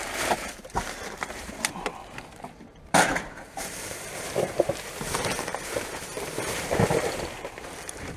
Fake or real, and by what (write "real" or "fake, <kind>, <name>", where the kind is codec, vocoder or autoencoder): fake, vocoder, BigVGAN v2